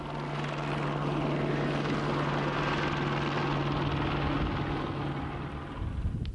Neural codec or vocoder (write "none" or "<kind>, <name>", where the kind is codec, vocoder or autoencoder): none